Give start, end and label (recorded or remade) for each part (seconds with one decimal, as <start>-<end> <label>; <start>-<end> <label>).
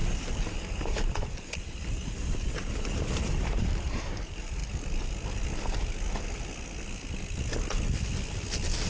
0.0-4.6 remade; 4.6-8.9 recorded